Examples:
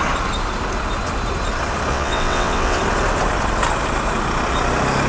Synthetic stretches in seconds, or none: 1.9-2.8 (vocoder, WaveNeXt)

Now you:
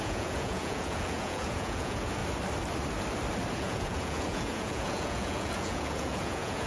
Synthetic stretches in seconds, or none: 0.0-2.2 (vocoder, Vocos); 3.5-6.7

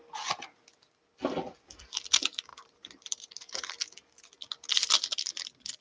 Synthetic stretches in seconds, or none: 2.5-3.7 (vocoder, BigVGAN v2)

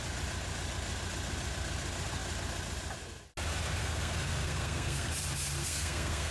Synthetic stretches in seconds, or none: 3.8-5.1 (codec, SNAC); 5.6-6.3